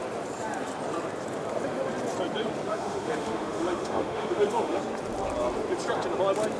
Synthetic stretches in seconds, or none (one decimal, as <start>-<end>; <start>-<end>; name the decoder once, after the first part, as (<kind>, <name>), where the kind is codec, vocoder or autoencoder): 2.7-4.8 (autoencoder, DAC-VAE)